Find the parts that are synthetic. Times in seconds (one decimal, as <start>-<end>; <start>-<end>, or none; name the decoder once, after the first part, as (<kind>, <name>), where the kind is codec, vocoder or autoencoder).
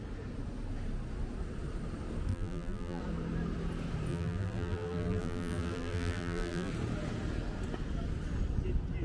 2.3-3.0 (vocoder, BigVGAN v2); 4.1-6.7